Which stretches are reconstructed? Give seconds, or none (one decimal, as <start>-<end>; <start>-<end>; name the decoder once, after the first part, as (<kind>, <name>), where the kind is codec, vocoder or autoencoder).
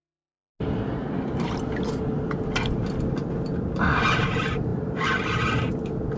0.0-0.5 (vocoder, BigVGAN v2); 4.2-4.7